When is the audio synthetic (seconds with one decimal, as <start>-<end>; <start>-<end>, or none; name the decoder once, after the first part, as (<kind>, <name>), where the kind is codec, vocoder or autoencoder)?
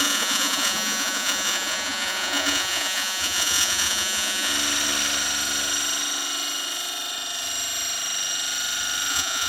0.0-4.5 (vocoder, Vocos); 9.1-9.5